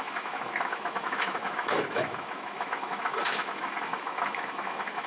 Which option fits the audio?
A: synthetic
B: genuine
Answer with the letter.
A